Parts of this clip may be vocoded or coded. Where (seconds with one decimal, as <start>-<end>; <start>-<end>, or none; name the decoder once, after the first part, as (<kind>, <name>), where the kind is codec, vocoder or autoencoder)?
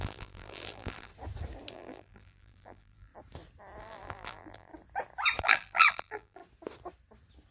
0.0-1.1 (vocoder, BigVGAN v2); 1.7-3.1; 3.8-4.7; 5.4-6.4